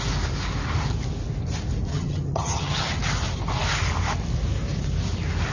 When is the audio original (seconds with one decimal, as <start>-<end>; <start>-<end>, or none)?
0.0-1.9; 3.0-5.5